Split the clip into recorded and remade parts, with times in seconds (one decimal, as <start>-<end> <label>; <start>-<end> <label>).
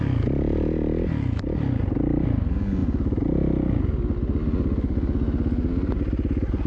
0.0-6.7 recorded